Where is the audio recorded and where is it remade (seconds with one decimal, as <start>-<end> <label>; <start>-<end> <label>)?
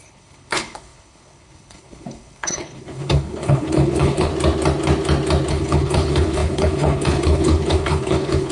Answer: 0.0-4.3 remade; 4.3-5.5 recorded; 5.5-8.5 remade